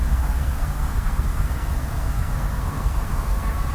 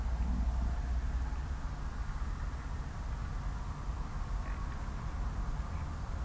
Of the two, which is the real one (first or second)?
second